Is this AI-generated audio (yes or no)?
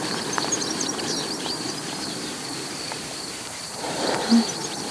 yes